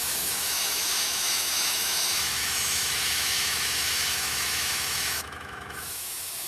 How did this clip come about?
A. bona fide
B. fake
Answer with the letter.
B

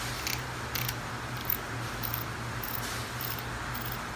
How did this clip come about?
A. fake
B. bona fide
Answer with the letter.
B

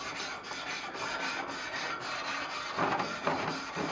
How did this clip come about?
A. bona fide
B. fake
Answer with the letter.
A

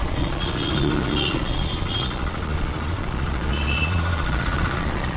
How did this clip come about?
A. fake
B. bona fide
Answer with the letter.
A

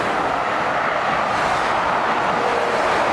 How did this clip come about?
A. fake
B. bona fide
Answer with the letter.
B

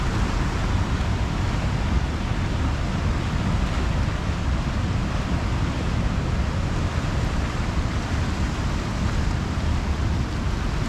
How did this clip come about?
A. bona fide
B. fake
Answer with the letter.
A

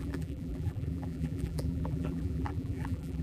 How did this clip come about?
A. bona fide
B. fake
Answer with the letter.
B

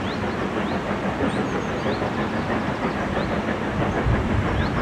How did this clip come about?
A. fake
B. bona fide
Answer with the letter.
B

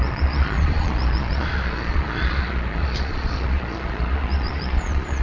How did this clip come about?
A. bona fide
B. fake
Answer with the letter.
B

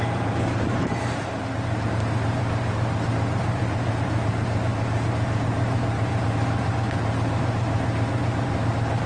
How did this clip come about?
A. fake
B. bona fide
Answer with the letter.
A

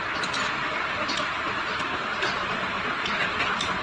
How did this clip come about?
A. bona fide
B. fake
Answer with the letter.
A